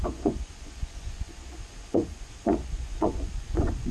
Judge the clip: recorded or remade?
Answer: remade